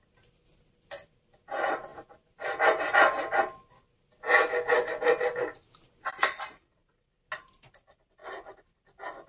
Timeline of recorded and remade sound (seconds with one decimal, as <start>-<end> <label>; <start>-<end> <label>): 0.0-9.3 recorded